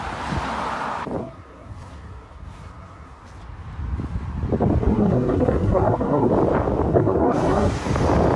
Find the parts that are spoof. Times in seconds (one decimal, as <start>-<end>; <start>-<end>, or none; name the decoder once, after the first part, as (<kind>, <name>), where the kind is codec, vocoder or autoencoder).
1.2-3.2 (codec, SNAC); 4.8-6.3; 6.9-7.8